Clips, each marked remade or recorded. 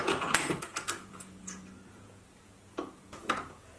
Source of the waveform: remade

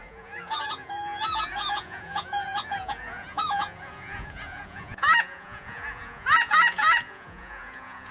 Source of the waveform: remade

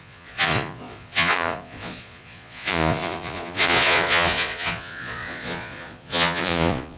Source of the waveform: remade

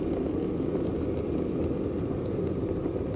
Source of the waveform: recorded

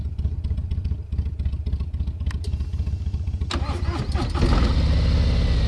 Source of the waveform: recorded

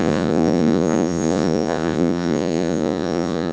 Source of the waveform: remade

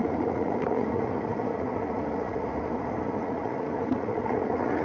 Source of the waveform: remade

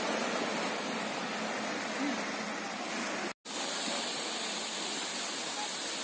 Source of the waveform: recorded